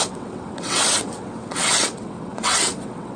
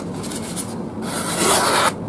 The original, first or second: second